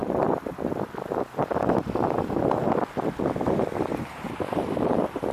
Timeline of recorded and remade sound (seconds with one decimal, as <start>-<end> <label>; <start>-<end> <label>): 0.0-3.2 recorded; 3.2-5.3 remade